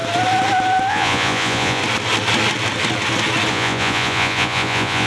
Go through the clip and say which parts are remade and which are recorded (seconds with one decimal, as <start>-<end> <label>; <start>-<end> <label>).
0.0-0.9 recorded; 0.9-1.8 remade; 1.8-3.5 recorded; 3.5-5.1 remade